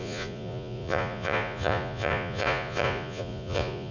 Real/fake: fake